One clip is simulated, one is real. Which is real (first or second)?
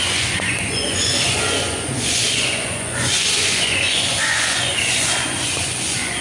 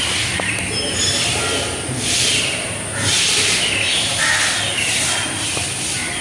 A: second